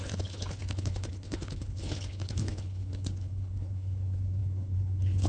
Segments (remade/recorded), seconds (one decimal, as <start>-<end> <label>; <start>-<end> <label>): 0.0-5.3 remade